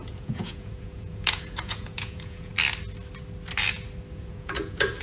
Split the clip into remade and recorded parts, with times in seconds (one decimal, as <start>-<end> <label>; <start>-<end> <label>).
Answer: 0.0-2.5 remade; 2.5-4.1 recorded; 4.1-5.0 remade